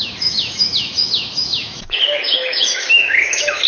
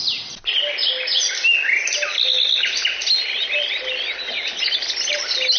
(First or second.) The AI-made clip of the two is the first